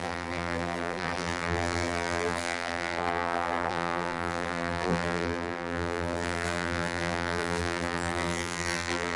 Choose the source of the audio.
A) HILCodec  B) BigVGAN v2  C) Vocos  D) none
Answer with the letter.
B